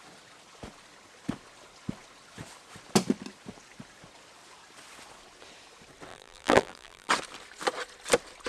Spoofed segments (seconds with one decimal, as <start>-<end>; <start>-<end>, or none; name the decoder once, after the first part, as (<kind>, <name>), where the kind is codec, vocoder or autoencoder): 6.1-7.1 (vocoder, BigVGAN v2)